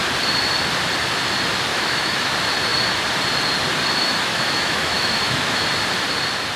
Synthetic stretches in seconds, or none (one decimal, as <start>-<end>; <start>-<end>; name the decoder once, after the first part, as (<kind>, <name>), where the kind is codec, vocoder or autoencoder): 1.7-2.3 (autoencoder, DAC-VAE); 4.1-5.6